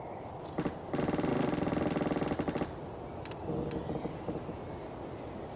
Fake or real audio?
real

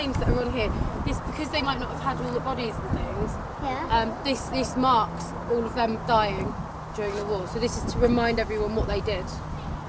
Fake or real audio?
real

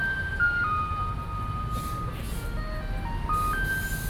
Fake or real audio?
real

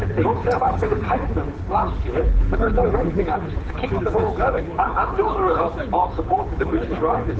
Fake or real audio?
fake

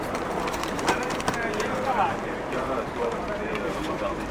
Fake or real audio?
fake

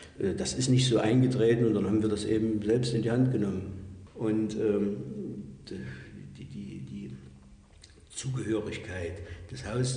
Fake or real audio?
real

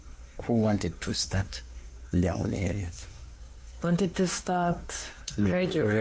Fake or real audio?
fake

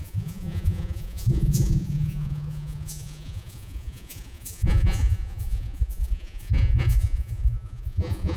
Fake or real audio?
fake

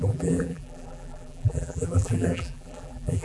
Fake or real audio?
fake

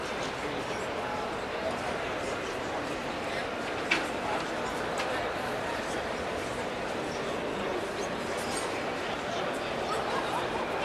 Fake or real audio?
real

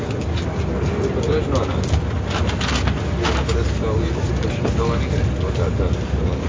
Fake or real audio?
real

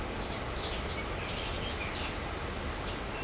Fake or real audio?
real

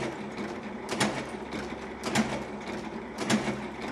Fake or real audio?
real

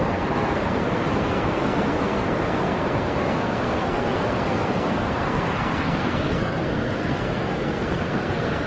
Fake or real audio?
fake